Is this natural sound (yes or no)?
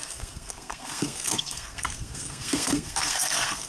no